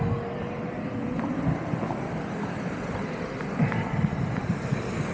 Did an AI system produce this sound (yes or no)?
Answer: no